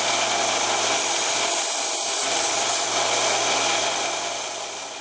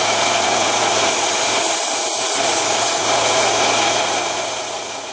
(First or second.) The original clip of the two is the first